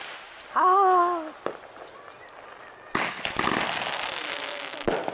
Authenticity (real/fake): real